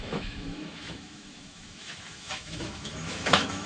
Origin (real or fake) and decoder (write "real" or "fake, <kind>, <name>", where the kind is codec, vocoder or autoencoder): fake, autoencoder, DAC-VAE